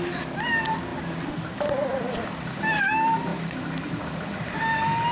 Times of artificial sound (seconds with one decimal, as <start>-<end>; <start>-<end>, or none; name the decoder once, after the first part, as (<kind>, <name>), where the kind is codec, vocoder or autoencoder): none